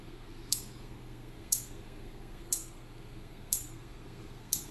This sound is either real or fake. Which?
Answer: fake